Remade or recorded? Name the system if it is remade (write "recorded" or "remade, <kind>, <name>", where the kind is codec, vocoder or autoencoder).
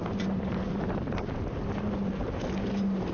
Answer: remade, vocoder, BigVGAN v2